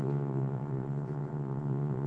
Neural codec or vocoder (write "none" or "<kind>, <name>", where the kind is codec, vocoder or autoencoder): vocoder, Vocos